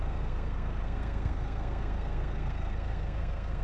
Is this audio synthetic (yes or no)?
yes